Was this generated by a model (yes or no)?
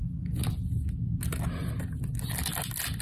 no